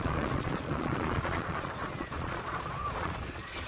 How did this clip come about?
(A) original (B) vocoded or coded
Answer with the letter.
B